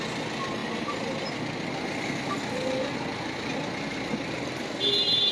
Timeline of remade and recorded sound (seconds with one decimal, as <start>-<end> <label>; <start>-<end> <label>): 0.0-5.3 recorded